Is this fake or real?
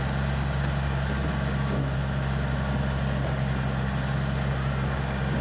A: real